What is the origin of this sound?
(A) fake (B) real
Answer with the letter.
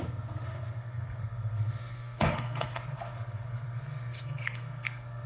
A